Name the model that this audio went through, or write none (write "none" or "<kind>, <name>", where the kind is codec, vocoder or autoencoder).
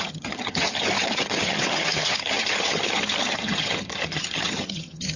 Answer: vocoder, HiFi-GAN